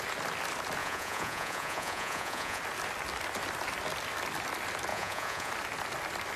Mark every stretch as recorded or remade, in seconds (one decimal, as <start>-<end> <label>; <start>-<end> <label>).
0.0-0.8 recorded; 0.8-2.6 remade; 2.6-4.9 recorded; 4.9-5.5 remade; 5.5-6.4 recorded